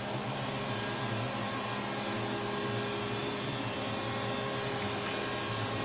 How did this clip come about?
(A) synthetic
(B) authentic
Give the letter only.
B